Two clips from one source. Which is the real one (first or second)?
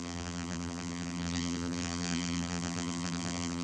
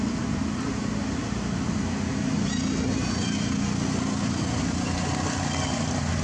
second